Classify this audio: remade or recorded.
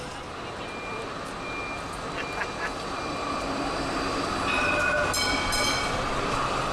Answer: recorded